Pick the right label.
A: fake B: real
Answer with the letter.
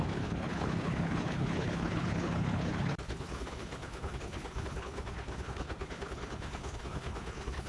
A